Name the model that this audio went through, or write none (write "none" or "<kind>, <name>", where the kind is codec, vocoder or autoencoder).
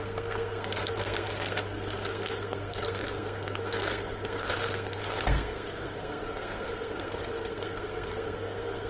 codec, SNAC